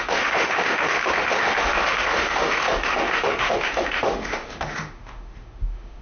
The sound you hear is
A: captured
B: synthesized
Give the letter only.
B